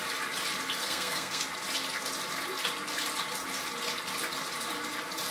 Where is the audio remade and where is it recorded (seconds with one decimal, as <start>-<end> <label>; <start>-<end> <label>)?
0.0-0.8 recorded; 0.8-1.4 remade; 1.4-5.3 recorded